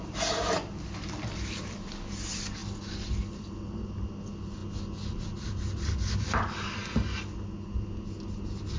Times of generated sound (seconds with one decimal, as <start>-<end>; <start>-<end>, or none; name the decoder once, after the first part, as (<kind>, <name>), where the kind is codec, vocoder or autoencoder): none